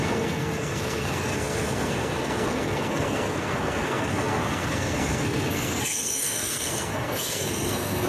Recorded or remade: remade